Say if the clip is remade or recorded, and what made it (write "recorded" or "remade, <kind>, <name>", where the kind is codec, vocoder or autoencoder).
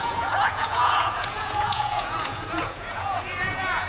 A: remade, vocoder, Vocos